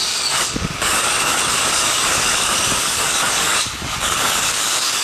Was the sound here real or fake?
fake